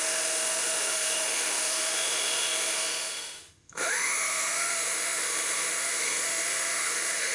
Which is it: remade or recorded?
remade